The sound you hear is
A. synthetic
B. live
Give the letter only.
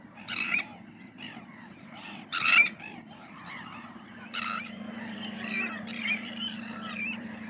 A